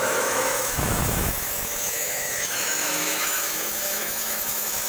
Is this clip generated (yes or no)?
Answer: yes